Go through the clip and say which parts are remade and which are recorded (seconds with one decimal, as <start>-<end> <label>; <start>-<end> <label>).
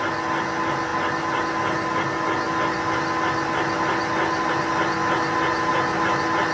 0.0-6.5 recorded